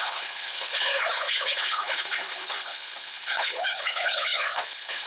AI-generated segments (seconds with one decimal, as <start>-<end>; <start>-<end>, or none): 0.0-5.1